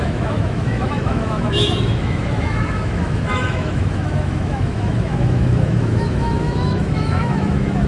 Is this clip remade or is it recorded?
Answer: remade